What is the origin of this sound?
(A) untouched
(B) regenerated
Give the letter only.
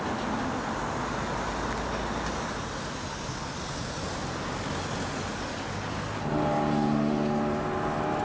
A